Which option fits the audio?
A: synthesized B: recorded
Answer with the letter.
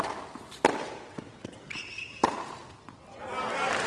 B